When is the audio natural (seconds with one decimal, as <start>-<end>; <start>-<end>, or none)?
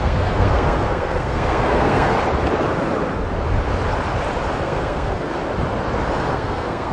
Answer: 2.1-4.6; 5.3-6.3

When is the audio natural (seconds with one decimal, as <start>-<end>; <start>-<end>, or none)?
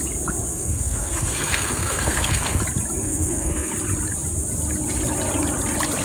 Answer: 0.0-0.5; 2.6-3.0; 3.7-6.0